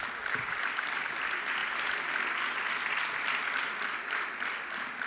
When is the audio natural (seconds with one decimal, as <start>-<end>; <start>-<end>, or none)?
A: 0.0-5.1